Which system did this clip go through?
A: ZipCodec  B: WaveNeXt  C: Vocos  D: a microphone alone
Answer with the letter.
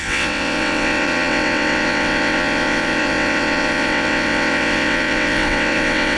B